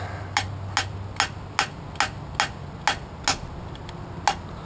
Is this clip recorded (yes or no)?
yes